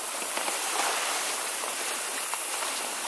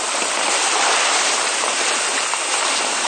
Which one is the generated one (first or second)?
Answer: first